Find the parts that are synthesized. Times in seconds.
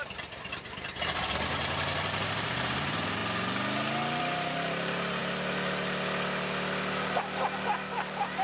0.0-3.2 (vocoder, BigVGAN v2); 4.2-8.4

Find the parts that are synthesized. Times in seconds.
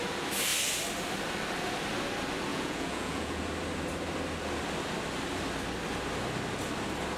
2.5-3.4 (vocoder, Vocos)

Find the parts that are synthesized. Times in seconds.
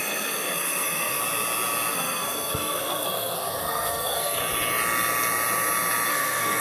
0.0-1.2 (codec, SNAC); 1.9-4.4; 6.1-6.6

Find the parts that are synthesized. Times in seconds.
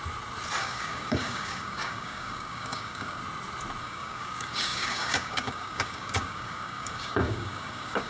0.6-3.2 (codec, DAC); 3.8-8.1